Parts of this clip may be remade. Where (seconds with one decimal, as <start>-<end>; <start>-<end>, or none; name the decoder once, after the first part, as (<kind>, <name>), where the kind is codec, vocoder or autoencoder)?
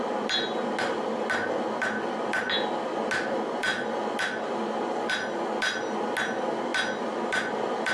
none